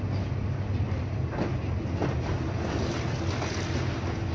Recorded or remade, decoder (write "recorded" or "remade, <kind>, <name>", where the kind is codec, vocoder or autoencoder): recorded